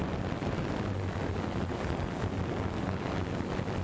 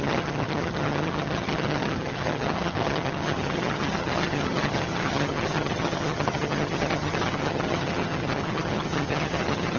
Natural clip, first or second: first